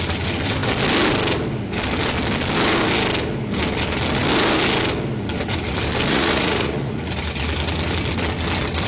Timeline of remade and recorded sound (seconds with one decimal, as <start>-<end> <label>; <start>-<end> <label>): 0.0-6.1 recorded; 6.1-7.1 remade; 7.1-8.9 recorded